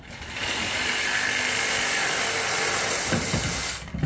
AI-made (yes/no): no